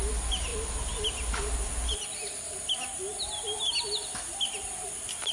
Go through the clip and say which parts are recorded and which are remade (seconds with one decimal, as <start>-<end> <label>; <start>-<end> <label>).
0.0-5.3 recorded